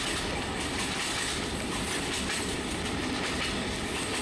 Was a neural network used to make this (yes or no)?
no